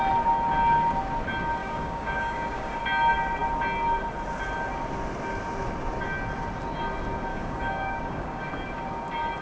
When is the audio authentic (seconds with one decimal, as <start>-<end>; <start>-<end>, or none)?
0.0-1.6; 2.8-7.3; 8.5-9.4